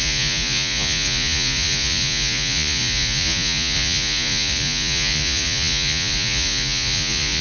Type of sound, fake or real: fake